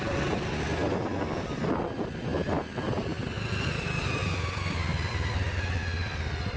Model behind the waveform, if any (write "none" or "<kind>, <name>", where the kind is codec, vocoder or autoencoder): none